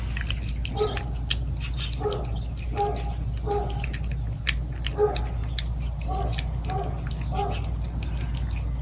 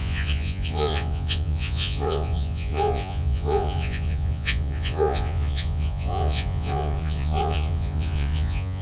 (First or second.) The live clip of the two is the first